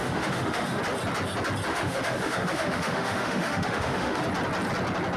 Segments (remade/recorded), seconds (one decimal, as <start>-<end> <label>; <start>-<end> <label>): 0.0-0.8 remade; 0.8-1.7 recorded; 1.7-4.2 remade; 4.2-5.2 recorded